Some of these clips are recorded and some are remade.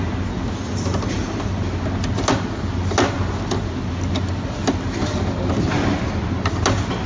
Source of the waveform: recorded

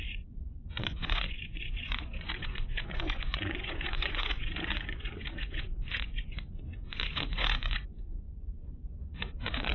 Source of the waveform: remade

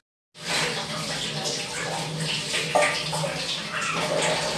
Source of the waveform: recorded